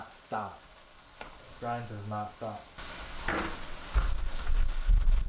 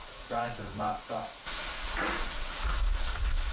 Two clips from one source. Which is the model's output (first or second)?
second